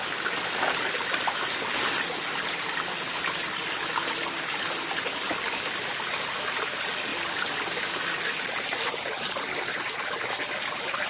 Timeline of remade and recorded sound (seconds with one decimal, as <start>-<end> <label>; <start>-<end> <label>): 0.0-11.1 recorded